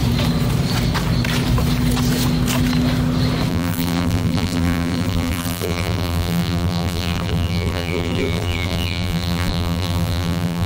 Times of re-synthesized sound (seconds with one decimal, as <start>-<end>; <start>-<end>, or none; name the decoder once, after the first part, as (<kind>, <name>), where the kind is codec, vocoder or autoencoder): 3.5-10.7 (vocoder, BigVGAN v2)